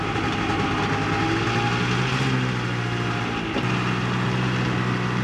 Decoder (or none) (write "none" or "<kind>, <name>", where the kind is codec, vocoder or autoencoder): none